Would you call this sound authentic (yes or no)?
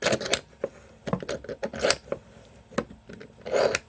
yes